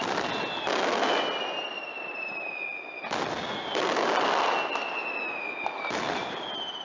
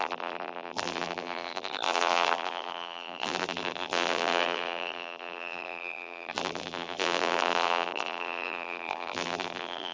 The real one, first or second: first